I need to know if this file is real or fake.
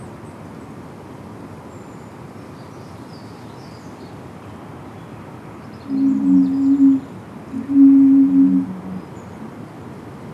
real